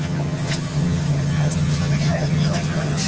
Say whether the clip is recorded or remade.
remade